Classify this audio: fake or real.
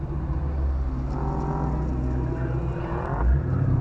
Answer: real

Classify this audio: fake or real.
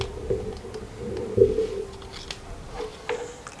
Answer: real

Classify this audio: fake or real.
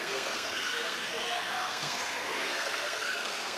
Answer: fake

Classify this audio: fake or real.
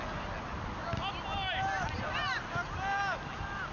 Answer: real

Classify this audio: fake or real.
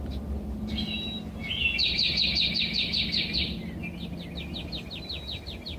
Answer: real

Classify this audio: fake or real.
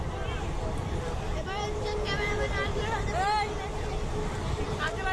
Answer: real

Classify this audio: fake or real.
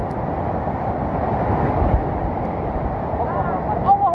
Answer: real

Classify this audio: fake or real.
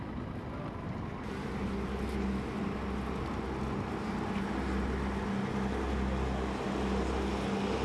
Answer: real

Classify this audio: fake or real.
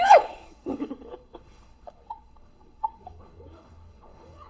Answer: fake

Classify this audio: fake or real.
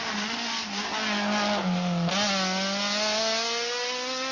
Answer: real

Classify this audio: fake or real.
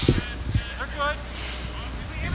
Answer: real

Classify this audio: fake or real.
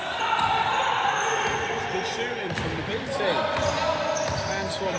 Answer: real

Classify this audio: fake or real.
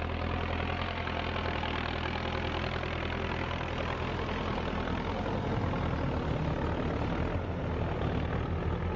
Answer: real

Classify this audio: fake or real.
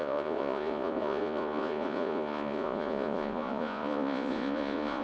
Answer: fake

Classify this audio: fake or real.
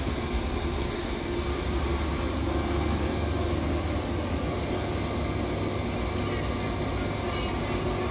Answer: real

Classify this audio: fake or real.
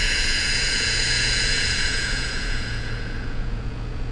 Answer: fake